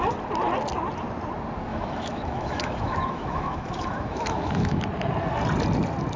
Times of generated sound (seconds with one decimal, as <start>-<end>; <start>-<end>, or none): 1.7-4.8